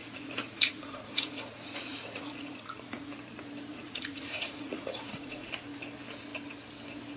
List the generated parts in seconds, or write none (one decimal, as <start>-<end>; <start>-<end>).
0.0-3.1; 3.7-5.5